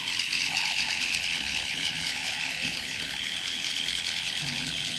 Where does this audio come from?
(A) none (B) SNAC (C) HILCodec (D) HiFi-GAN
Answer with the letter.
C